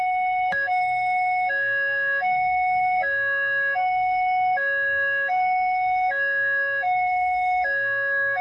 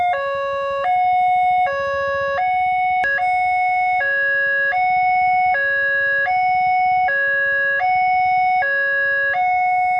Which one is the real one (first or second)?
second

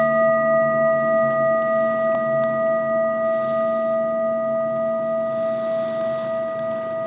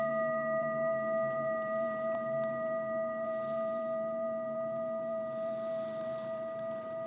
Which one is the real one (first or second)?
first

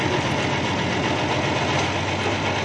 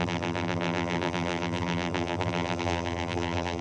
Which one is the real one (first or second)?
first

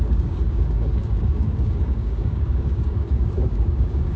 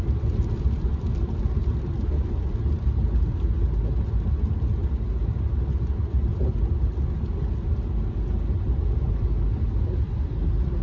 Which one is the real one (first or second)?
second